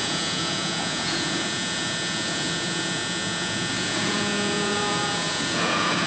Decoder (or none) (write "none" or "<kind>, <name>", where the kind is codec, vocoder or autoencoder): vocoder, Vocos